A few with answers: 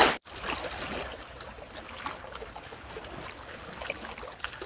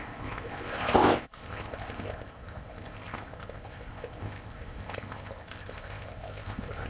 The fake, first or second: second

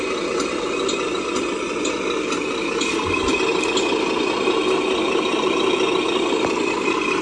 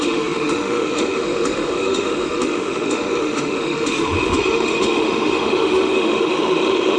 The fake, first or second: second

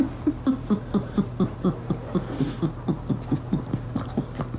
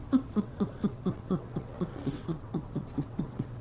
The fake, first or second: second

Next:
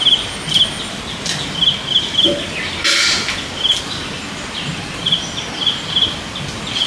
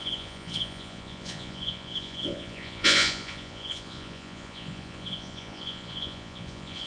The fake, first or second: second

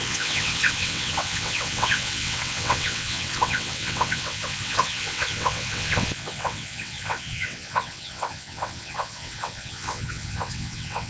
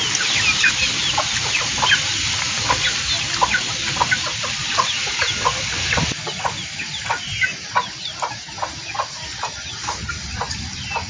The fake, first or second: first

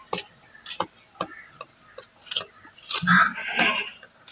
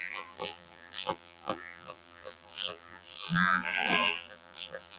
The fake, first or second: second